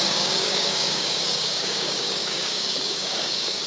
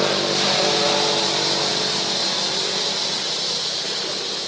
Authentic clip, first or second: second